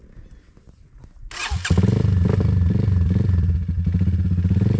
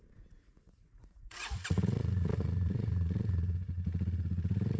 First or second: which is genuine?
first